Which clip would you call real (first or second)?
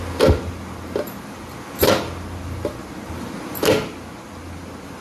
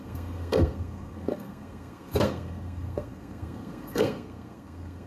first